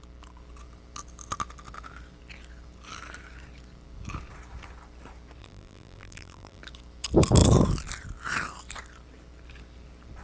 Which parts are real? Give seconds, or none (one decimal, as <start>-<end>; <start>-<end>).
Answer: 0.0-5.4; 6.6-10.2

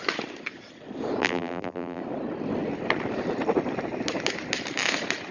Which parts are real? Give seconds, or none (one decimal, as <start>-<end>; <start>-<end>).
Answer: 0.0-1.2; 2.0-5.3

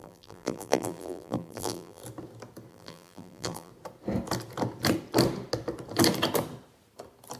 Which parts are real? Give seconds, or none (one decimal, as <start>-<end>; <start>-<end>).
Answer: 2.0-2.7; 3.7-7.4